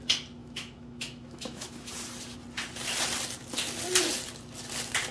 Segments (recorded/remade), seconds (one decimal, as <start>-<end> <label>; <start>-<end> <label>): 0.0-0.4 recorded; 0.4-1.9 remade; 1.9-5.1 recorded